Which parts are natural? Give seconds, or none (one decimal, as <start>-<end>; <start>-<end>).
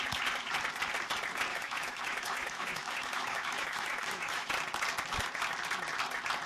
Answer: 0.0-1.5; 4.5-6.5